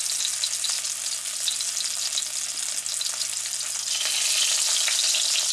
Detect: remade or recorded recorded